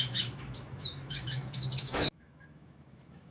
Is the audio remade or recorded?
remade